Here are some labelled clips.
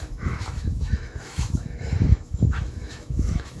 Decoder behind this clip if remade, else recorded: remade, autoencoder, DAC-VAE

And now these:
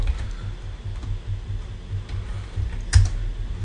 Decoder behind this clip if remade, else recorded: recorded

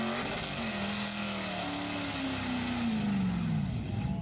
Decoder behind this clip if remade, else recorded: recorded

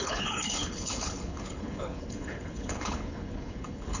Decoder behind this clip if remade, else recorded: remade, codec, HILCodec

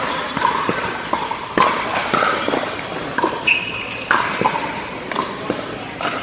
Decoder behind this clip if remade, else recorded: recorded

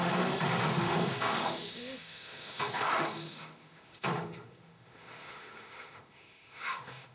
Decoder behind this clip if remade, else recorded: remade, autoencoder, DAC-VAE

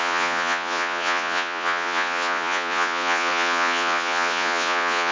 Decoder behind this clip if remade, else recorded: remade, vocoder, Vocos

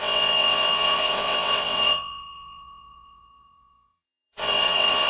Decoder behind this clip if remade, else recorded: remade, vocoder, WaveNeXt